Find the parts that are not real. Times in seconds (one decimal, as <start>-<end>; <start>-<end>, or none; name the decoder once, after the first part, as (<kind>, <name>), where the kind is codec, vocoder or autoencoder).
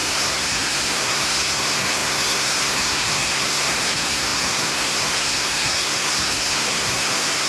0.0-7.5 (codec, SNAC)